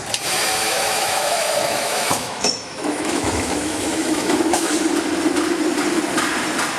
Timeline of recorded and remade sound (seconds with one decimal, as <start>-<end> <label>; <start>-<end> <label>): 0.0-0.6 recorded; 0.6-4.7 remade; 4.7-6.8 recorded